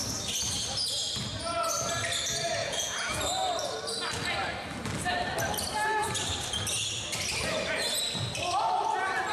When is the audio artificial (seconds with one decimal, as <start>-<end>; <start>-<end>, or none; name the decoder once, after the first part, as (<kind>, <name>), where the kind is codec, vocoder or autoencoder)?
2.6-3.2 (vocoder, Vocos)